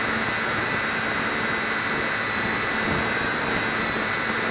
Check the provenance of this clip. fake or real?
real